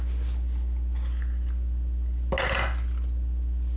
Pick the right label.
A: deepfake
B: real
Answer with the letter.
B